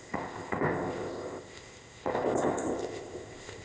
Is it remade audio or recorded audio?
remade